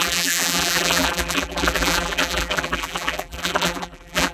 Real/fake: fake